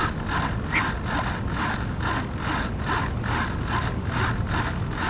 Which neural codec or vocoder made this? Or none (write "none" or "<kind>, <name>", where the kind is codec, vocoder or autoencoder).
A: none